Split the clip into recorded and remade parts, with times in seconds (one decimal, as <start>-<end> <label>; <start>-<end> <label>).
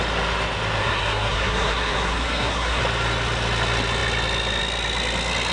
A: 0.0-0.8 recorded; 0.8-2.8 remade; 2.8-5.5 recorded